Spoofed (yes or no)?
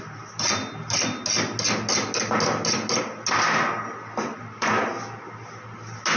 no